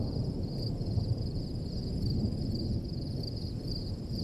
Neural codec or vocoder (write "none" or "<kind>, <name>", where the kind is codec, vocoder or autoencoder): none